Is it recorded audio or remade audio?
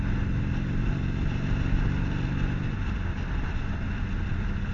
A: recorded